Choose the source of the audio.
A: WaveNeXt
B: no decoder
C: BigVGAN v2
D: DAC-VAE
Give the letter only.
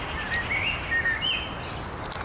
B